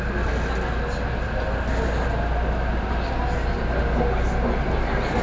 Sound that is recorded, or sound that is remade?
recorded